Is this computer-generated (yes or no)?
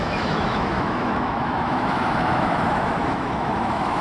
yes